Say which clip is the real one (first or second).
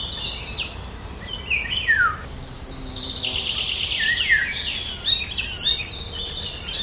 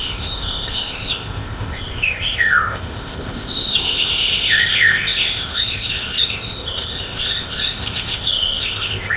first